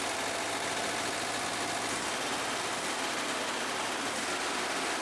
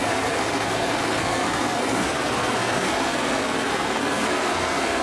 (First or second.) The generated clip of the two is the second